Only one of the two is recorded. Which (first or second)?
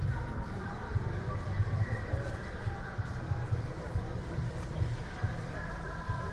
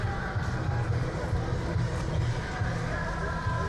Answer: second